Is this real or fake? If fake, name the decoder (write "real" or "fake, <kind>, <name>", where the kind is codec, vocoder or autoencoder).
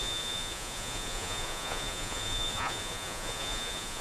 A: fake, vocoder, Vocos